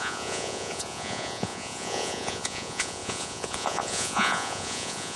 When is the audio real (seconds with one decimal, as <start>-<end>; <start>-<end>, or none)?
none